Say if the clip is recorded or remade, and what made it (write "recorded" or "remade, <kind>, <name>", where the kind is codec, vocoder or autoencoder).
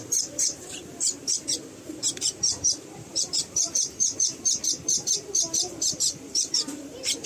remade, vocoder, BigVGAN v2